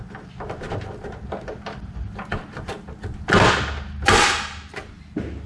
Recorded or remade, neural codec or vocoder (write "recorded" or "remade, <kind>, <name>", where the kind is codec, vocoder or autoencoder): recorded